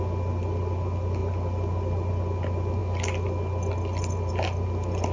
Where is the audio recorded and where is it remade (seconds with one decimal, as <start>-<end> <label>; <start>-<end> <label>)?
0.0-5.1 recorded